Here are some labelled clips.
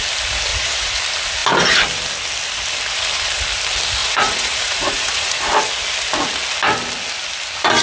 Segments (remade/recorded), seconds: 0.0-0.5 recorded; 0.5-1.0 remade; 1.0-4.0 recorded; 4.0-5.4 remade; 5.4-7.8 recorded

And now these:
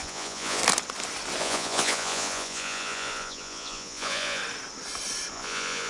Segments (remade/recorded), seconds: 0.0-0.6 remade; 0.6-1.4 recorded; 1.4-4.4 remade; 4.4-5.3 recorded; 5.3-5.9 remade

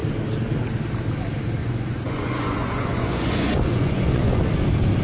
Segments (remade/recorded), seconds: 0.0-1.6 recorded; 1.6-4.4 remade; 4.4-5.0 recorded

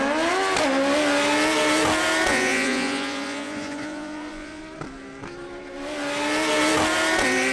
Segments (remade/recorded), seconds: 0.0-2.3 recorded; 2.3-4.6 remade; 4.6-7.5 recorded

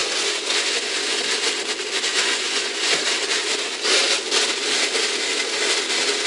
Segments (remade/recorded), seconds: 0.0-1.3 remade; 1.3-2.1 recorded; 2.1-3.0 remade; 3.0-6.3 recorded

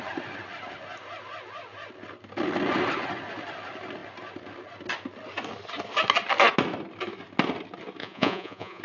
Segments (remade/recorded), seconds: 0.0-8.0 recorded; 8.0-8.8 remade